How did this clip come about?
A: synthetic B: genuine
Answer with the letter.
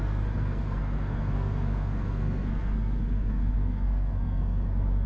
A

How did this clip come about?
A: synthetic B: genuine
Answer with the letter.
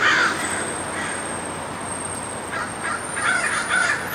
B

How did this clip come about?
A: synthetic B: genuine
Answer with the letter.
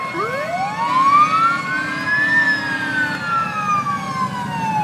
B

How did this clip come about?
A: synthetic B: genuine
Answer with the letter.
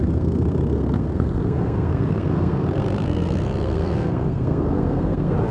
A